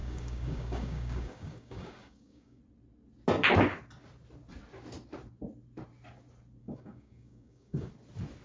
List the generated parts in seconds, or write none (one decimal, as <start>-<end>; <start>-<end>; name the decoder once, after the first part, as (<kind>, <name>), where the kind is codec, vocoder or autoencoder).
0.0-2.6 (codec, DAC); 6.6-7.9